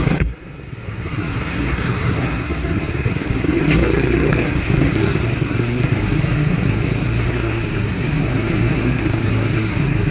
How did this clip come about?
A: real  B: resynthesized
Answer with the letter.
B